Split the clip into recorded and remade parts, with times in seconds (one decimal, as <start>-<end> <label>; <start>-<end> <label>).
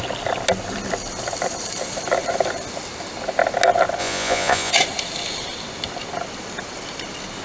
0.0-4.0 recorded; 4.0-4.7 remade; 4.7-7.4 recorded